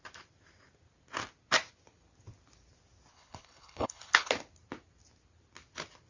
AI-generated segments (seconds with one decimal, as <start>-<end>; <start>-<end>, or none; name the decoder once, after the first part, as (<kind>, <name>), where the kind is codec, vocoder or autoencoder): 3.1-4.3 (codec, HILCodec)